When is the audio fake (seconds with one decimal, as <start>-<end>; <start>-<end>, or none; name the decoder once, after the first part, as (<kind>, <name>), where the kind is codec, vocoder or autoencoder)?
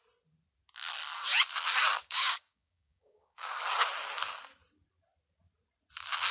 2.0-3.6 (codec, DAC)